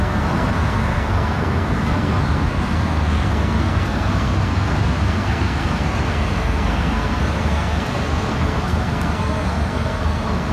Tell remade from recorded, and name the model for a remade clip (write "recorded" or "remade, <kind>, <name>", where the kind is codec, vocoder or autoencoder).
remade, codec, SNAC